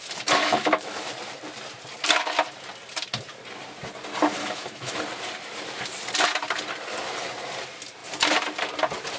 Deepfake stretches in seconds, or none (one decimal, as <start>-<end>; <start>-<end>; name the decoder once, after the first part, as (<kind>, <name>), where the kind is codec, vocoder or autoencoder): 0.4-1.1 (autoencoder, DAC-VAE); 4.4-5.0